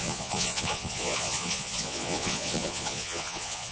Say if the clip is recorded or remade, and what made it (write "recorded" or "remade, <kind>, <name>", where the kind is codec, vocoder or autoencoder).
remade, vocoder, Vocos